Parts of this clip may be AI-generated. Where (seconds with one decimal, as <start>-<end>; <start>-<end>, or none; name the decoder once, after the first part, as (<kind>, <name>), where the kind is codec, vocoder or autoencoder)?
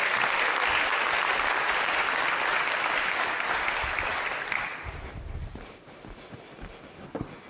1.2-3.5 (vocoder, BigVGAN v2)